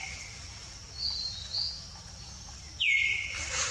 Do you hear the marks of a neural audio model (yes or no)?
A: no